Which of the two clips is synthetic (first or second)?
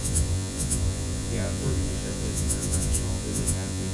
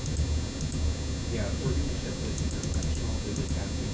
first